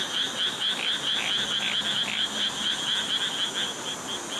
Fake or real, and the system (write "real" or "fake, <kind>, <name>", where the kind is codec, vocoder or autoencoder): real